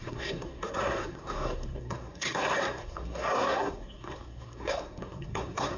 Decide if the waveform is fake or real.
fake